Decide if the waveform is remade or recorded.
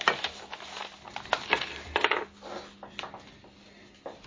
recorded